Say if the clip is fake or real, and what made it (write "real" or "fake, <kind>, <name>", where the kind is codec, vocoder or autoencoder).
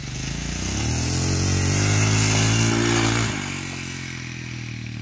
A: real